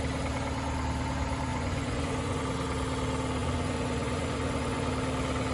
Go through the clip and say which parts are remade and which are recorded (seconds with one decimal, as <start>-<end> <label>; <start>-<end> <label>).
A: 0.0-1.5 recorded; 1.5-2.4 remade; 2.4-3.4 recorded; 3.4-4.9 remade; 4.9-5.5 recorded